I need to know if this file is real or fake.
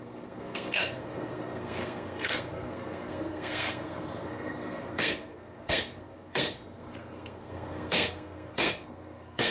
fake